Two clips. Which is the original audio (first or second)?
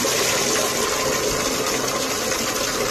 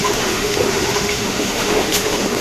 first